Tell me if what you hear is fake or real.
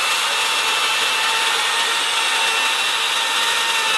real